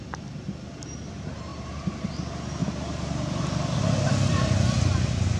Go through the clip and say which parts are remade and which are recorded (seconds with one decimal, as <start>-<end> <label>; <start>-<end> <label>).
0.0-1.5 recorded; 1.5-2.1 remade; 2.1-2.6 recorded; 2.6-4.1 remade; 4.1-5.4 recorded